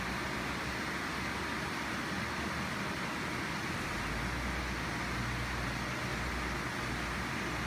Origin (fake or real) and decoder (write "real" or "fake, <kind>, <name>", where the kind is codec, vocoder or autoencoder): real